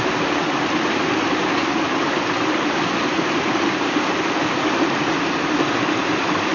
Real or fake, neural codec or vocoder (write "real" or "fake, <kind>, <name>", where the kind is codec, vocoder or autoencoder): real